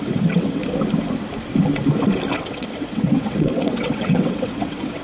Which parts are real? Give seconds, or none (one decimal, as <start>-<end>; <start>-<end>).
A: 0.6-2.3